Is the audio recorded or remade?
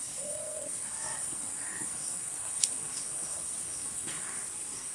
remade